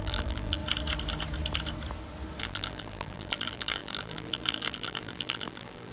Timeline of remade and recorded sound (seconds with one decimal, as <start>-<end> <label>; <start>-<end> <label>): 0.0-0.6 remade; 0.6-2.4 recorded; 2.4-5.9 remade